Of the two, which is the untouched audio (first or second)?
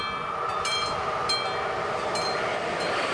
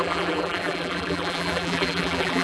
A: first